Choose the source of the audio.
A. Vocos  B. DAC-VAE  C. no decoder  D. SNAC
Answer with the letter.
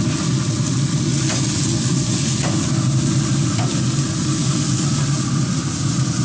C